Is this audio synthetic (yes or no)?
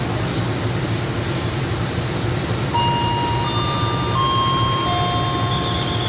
no